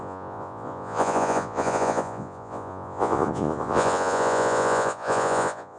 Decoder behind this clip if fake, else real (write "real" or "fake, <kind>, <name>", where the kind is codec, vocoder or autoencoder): fake, vocoder, Vocos